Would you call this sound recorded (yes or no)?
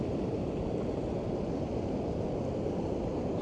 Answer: yes